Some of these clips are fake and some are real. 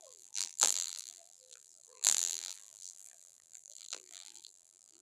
fake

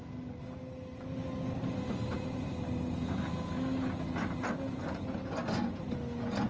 real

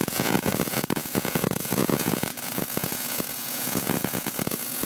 fake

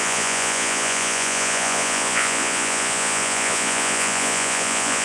fake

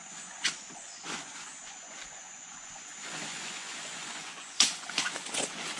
fake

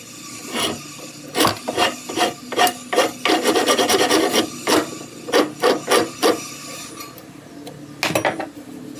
real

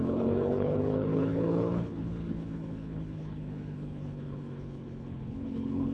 fake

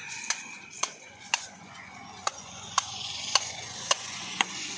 fake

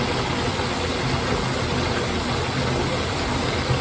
real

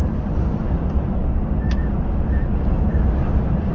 real